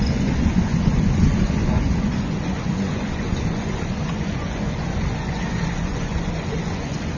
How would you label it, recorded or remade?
remade